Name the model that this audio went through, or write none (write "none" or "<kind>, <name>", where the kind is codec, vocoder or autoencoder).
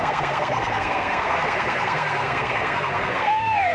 codec, SNAC